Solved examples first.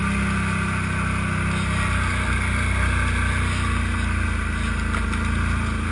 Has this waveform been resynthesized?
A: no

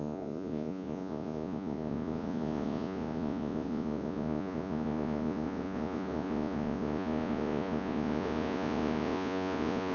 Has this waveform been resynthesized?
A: yes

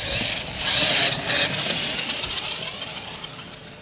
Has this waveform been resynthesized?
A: no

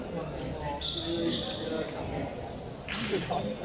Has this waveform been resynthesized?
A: no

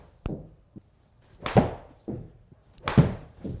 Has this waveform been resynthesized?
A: no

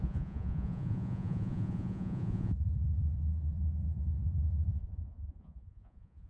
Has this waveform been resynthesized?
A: yes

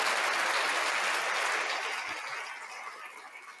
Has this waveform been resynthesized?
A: no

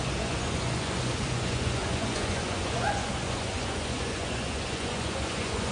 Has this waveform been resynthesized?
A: yes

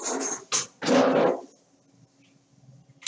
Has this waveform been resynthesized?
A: no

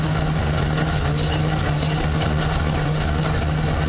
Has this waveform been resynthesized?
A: no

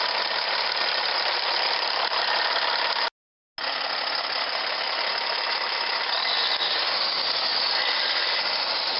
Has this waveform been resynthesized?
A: no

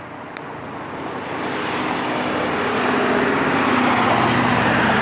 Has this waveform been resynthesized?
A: no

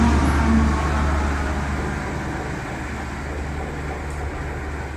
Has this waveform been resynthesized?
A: no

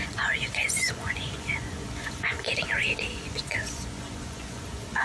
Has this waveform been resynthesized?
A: yes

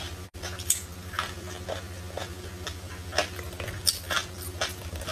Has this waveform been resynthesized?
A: no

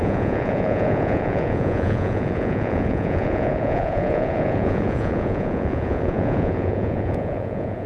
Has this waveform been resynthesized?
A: yes